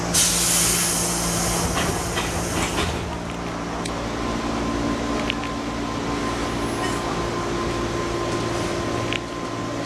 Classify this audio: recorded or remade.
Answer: recorded